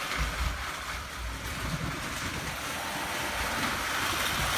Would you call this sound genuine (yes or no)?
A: yes